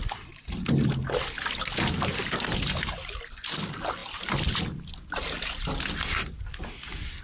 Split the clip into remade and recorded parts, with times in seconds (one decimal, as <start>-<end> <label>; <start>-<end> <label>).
0.0-7.2 recorded

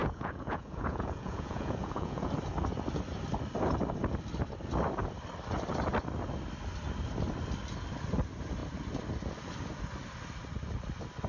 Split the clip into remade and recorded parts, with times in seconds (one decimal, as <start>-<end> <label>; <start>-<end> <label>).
0.0-2.3 remade; 2.3-11.3 recorded

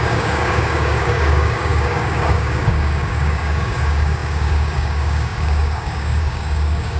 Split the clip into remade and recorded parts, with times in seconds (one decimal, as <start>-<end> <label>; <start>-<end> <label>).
0.0-7.0 remade